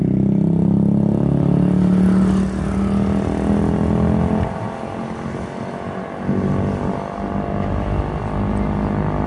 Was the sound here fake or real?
real